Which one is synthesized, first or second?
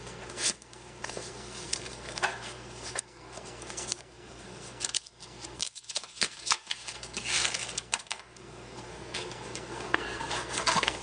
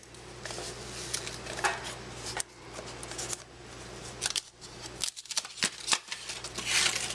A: first